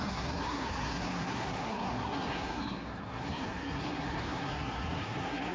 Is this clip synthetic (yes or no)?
yes